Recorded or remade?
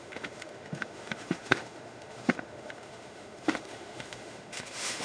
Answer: remade